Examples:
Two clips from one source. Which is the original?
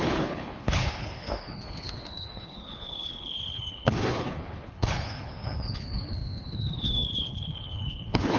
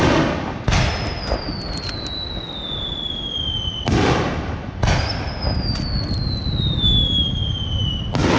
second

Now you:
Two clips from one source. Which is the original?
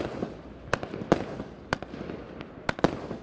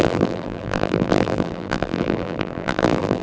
first